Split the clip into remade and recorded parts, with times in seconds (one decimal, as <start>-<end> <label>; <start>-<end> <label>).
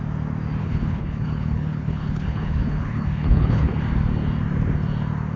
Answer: 0.0-0.6 recorded; 0.6-3.8 remade; 3.8-5.4 recorded